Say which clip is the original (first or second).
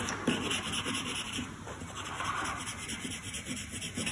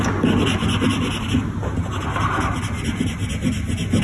second